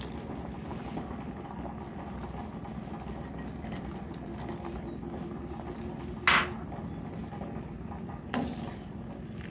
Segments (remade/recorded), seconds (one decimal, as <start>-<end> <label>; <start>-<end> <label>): 0.0-9.5 recorded